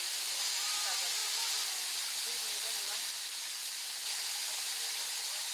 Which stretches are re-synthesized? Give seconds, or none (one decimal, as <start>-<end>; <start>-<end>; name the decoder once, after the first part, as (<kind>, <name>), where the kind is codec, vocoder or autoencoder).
none